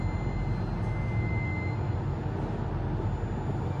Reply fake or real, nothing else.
real